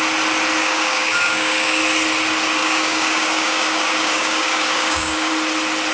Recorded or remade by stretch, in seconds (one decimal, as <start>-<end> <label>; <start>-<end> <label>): 0.0-0.6 recorded; 0.6-1.8 remade; 1.8-2.6 recorded; 2.6-5.3 remade; 5.3-5.9 recorded